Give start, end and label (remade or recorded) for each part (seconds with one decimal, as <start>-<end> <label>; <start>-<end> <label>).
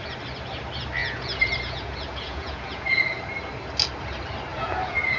0.0-1.0 recorded; 1.0-3.2 remade; 3.2-4.5 recorded; 4.5-5.2 remade